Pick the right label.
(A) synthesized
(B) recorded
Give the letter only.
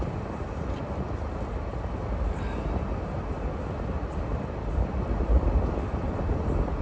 B